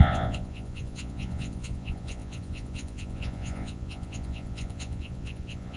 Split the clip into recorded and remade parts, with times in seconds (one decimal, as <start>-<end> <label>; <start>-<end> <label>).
0.0-5.8 remade